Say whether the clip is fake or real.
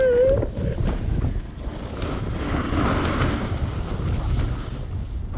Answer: real